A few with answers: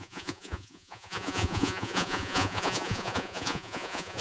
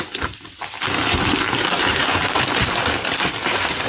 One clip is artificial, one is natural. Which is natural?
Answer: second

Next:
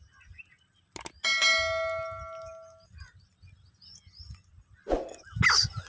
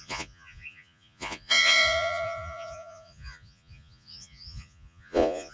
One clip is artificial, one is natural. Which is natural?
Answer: first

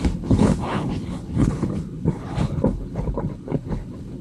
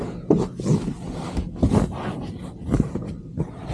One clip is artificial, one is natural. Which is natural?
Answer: second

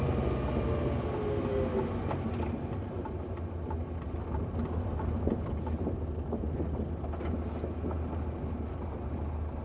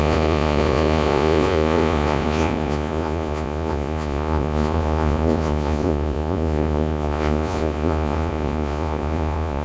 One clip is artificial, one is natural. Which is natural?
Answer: first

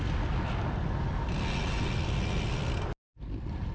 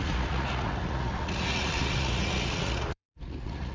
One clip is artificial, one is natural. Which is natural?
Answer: first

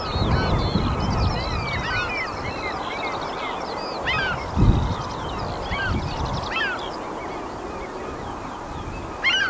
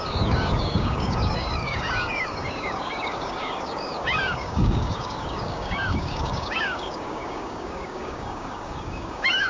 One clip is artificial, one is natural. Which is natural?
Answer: first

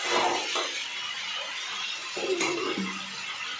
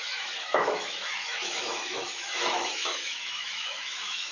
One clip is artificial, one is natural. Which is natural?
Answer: first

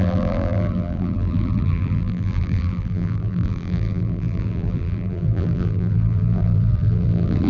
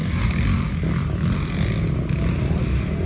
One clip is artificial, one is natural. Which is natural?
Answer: second